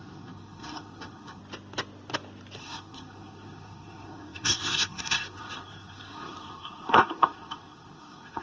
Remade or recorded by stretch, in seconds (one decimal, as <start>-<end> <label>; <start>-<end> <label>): 0.0-1.4 remade; 1.4-2.6 recorded; 2.6-8.4 remade